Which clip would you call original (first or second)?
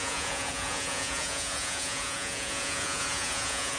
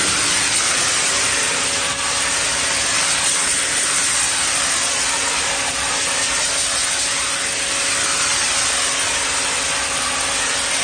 second